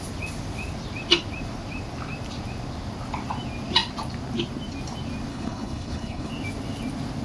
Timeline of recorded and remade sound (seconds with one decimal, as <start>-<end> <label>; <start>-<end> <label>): 0.0-5.3 recorded; 5.3-6.3 remade; 6.3-7.2 recorded